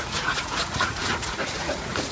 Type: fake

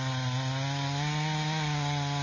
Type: real